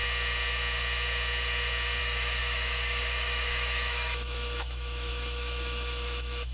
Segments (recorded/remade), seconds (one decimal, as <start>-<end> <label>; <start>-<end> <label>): 0.0-2.0 recorded; 2.0-6.5 remade